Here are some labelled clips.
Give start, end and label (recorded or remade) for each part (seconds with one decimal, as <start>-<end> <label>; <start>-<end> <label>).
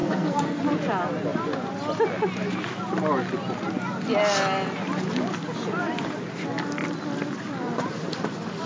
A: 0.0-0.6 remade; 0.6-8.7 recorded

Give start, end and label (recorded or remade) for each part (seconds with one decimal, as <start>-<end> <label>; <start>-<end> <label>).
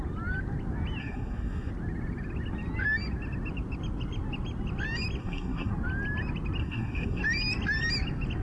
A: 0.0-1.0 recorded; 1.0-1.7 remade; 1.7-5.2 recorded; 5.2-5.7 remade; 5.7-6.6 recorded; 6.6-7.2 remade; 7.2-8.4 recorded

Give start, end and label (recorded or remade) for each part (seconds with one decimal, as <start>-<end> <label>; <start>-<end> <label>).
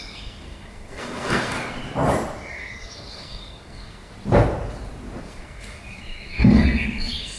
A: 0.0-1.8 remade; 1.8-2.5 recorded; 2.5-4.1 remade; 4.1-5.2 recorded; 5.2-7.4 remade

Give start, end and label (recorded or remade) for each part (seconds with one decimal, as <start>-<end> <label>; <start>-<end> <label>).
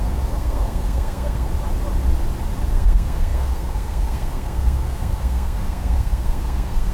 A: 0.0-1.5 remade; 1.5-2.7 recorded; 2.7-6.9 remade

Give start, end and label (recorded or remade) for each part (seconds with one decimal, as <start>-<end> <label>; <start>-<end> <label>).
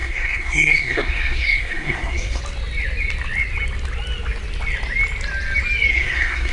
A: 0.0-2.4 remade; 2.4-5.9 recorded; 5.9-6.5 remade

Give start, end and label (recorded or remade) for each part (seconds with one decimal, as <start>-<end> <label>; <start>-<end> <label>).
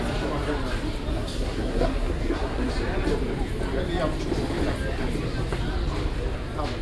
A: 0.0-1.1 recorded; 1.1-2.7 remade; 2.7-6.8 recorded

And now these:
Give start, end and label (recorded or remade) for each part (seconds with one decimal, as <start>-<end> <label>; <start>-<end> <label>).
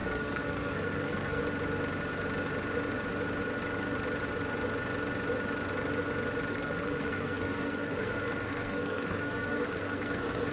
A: 0.0-1.4 remade; 1.4-6.5 recorded; 6.5-10.5 remade